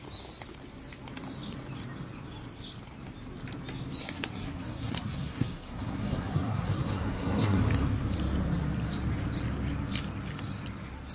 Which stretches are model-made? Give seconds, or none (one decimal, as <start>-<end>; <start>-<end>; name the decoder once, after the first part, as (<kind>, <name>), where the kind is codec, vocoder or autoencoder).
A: 4.0-7.6 (codec, SNAC)